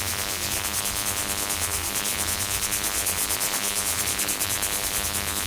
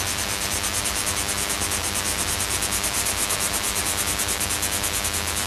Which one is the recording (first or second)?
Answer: second